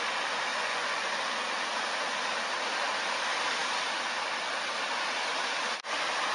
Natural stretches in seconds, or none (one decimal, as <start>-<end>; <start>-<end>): 0.0-0.5; 1.2-6.3